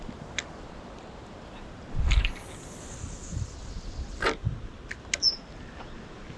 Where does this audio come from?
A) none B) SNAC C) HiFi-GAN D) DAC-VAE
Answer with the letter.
A